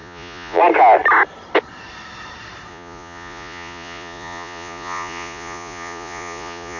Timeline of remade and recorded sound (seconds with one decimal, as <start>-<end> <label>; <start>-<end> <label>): 0.0-0.6 remade; 0.6-2.7 recorded; 2.7-6.8 remade